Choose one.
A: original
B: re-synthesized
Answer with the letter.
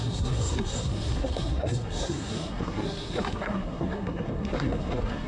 B